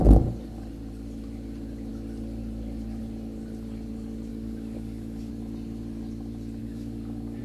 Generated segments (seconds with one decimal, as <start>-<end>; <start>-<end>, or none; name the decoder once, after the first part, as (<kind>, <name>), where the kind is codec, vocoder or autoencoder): 4.3-5.3 (codec, DAC); 6.6-7.4